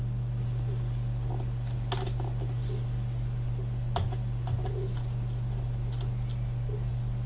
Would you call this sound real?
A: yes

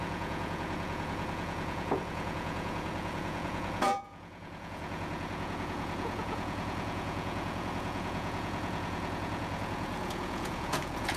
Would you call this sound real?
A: no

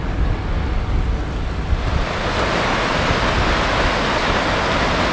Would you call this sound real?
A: yes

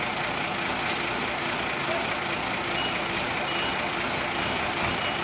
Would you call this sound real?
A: yes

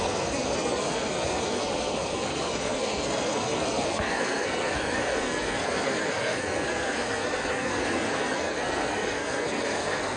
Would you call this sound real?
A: no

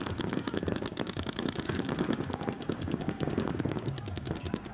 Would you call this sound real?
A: no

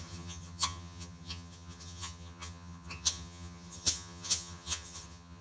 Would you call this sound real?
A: no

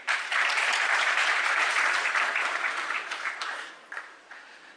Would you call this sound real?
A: no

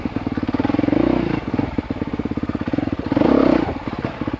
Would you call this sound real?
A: no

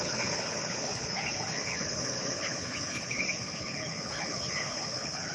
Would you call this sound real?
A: no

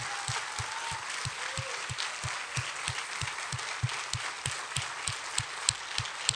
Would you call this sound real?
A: yes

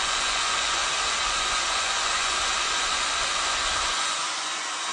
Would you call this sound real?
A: no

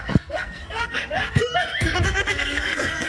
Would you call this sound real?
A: no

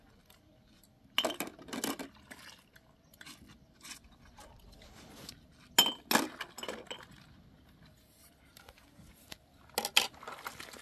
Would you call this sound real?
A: yes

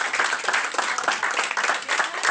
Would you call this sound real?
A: yes